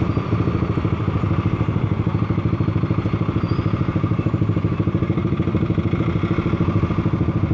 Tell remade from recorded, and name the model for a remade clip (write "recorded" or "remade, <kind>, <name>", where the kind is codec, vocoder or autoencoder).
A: recorded